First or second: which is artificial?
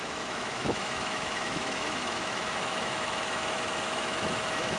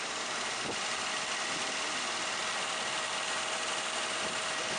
first